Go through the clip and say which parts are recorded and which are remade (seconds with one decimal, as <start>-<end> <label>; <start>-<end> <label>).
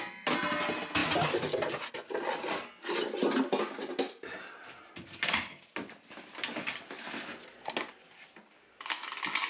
0.0-9.5 recorded